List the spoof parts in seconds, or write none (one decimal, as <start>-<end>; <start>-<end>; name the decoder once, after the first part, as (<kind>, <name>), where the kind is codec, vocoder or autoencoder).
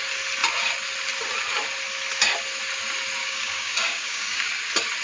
3.2-4.5 (codec, DAC)